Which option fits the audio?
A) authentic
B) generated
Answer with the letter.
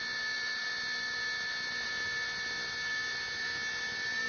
A